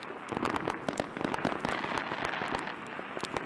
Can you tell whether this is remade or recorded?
recorded